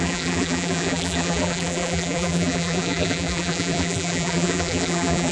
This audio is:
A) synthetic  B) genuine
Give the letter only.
A